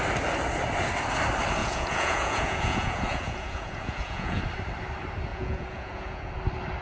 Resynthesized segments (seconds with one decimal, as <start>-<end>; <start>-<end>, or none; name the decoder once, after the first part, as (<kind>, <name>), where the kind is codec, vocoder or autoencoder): 1.6-4.4 (vocoder, Vocos); 5.3-6.3

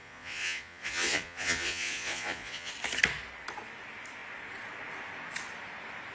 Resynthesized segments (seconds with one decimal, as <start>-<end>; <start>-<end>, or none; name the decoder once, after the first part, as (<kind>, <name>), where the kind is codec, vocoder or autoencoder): 0.0-2.7 (vocoder, Vocos)

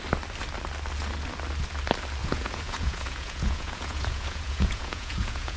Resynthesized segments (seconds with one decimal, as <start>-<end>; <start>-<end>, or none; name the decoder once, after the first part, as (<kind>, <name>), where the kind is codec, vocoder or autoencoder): 2.2-5.6 (vocoder, Vocos)

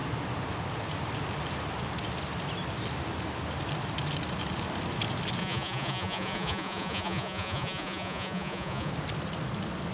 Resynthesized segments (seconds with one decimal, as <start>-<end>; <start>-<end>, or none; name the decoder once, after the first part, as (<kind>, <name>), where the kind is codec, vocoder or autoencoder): 5.4-8.9 (vocoder, Vocos)

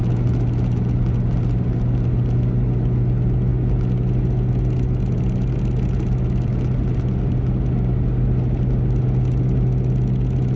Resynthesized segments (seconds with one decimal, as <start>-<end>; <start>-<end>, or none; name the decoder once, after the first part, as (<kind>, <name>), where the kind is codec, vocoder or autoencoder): none

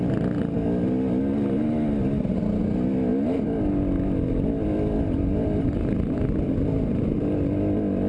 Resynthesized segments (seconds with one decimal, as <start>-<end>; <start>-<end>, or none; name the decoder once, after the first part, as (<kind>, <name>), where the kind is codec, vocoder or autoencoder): none

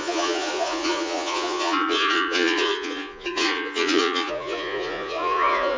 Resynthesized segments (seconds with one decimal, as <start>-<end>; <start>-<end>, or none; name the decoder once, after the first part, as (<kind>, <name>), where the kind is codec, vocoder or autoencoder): 0.0-5.8 (vocoder, Vocos)